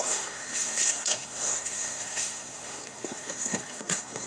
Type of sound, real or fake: fake